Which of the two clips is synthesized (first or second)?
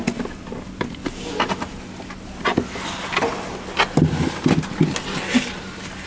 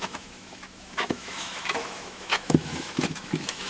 second